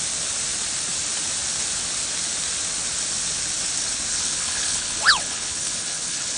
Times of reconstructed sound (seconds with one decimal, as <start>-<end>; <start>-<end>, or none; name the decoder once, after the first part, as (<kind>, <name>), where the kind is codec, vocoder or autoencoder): 4.1-6.4 (codec, HILCodec)